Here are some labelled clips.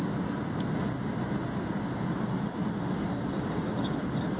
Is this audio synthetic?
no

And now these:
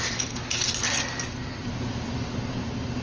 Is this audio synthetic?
no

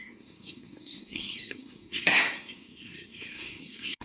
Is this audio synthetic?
yes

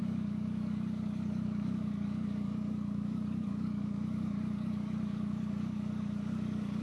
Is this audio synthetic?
yes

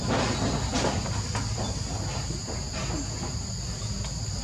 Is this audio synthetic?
no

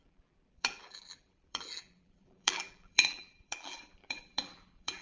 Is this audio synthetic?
yes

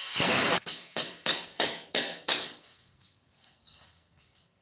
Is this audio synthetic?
yes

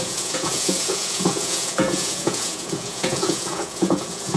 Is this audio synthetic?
yes